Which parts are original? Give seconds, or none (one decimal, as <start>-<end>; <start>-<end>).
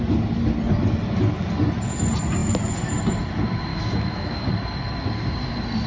0.0-3.7; 4.5-5.9